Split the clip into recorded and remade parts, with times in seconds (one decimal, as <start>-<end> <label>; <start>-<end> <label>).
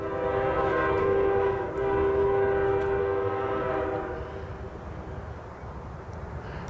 0.0-1.0 recorded; 1.0-1.7 remade; 1.7-3.0 recorded; 3.0-3.7 remade; 3.7-6.7 recorded